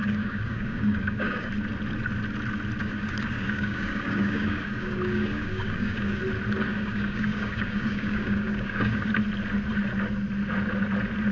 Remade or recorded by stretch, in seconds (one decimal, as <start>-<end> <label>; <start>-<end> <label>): 0.0-1.5 remade; 1.5-2.8 recorded; 2.8-6.2 remade; 6.2-6.7 recorded; 6.7-9.1 remade; 9.1-11.3 recorded